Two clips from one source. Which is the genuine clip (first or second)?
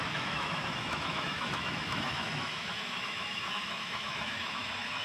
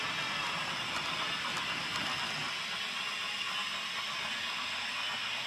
second